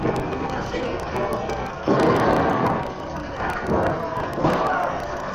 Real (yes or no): no